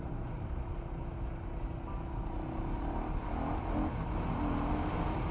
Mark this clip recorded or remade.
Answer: recorded